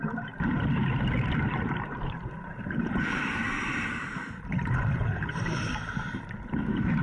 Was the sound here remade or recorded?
remade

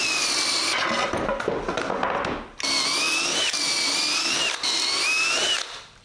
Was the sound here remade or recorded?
recorded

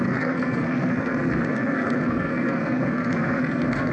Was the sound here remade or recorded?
remade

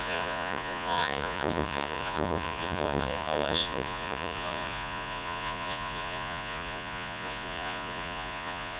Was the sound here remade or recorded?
remade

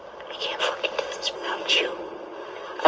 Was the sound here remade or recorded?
recorded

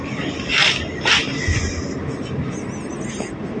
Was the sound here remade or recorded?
recorded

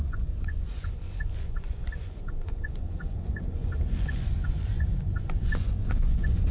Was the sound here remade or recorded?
remade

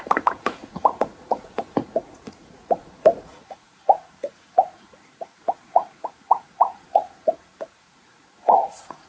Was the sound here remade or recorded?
remade